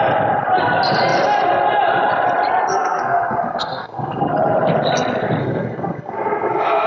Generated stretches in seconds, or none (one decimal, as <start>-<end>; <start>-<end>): 2.7-4.2; 5.4-6.9